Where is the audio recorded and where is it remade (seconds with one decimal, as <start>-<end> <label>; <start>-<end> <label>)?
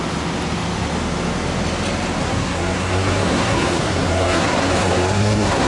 0.0-2.2 recorded; 2.2-5.7 remade